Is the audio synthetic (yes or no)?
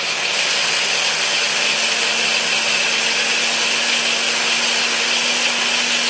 no